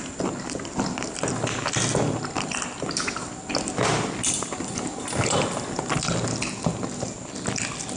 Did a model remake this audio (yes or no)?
no